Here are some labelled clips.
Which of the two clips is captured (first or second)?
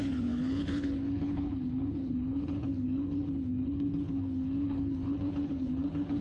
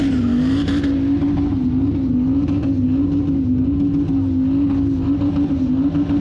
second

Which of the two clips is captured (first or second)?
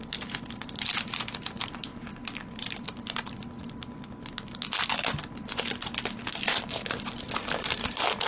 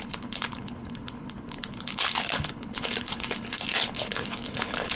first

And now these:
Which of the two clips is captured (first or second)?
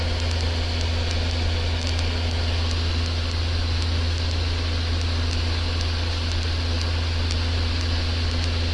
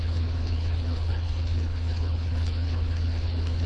first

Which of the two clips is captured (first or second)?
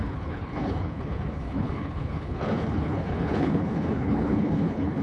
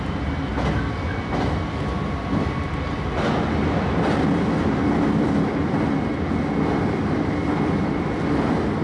second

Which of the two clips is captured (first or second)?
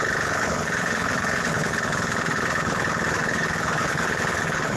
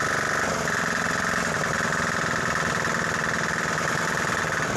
second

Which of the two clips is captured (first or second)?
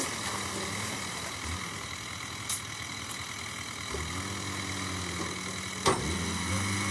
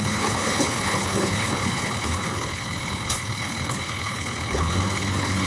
first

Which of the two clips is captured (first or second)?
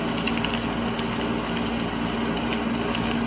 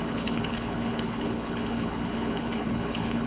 first